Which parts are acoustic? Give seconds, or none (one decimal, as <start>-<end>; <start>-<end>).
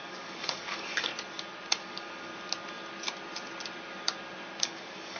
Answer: 1.1-1.8; 2.3-4.6